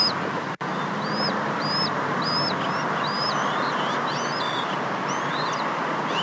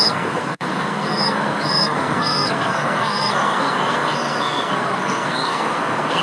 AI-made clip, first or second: second